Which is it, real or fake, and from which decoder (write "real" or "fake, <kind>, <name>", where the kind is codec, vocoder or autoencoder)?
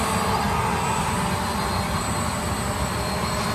real